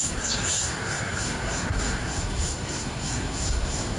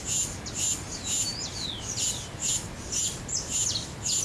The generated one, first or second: first